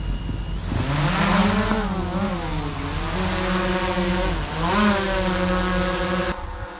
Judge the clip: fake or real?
real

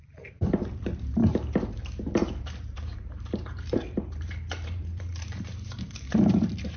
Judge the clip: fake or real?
fake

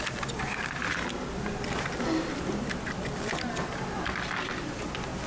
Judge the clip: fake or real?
real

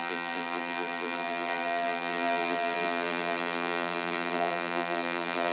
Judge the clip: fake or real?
fake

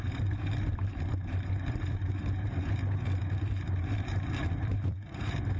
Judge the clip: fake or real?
fake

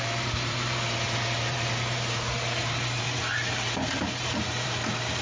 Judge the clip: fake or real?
fake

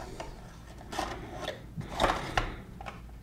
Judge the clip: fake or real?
real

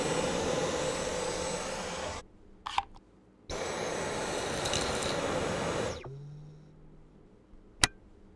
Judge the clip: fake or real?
real